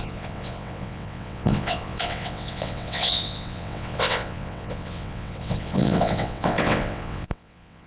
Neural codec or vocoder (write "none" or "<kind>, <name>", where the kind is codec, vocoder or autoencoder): vocoder, WaveNeXt